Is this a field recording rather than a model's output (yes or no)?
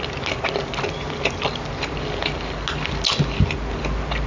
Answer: yes